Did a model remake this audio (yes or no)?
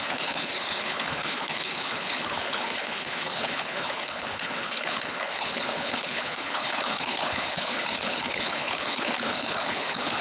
yes